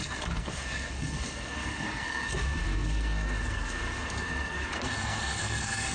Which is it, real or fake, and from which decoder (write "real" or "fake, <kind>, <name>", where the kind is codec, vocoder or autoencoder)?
fake, codec, SNAC